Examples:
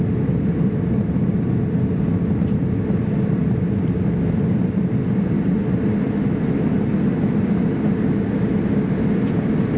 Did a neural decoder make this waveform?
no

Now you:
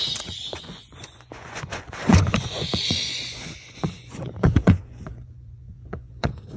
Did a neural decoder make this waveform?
yes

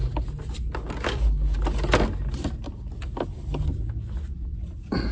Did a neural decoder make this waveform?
no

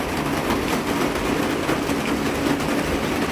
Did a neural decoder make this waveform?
no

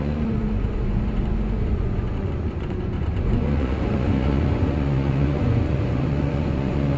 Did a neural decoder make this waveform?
yes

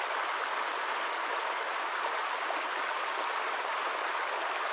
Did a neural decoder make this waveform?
no